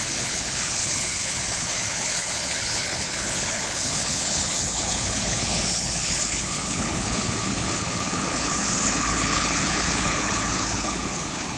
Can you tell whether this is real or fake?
fake